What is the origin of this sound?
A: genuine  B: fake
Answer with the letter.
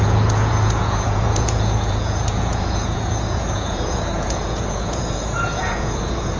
B